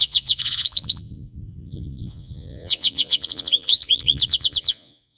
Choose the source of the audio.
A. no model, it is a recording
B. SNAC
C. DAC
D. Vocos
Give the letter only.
D